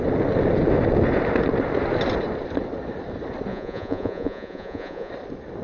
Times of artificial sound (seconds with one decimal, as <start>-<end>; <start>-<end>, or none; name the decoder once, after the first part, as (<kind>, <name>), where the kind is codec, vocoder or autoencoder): 3.5-5.1 (vocoder, Vocos)